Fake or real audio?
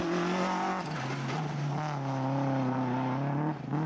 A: real